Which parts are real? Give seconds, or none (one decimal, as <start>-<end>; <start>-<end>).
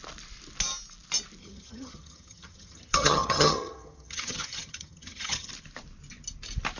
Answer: 0.0-1.4; 5.5-6.8